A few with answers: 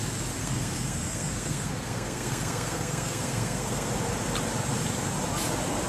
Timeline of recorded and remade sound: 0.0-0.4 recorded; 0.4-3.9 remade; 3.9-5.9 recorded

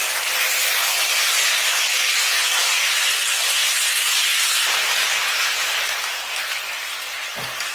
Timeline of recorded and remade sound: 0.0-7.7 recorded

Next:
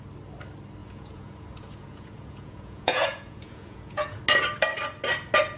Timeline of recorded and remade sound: 0.0-0.8 recorded; 0.8-4.2 remade; 4.2-5.6 recorded

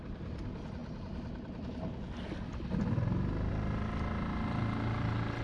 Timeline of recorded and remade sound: 0.0-5.4 recorded

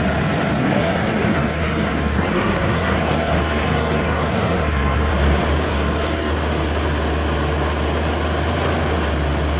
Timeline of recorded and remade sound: 0.0-0.6 recorded; 0.6-5.1 remade; 5.1-5.7 recorded; 5.7-6.3 remade; 6.3-9.6 recorded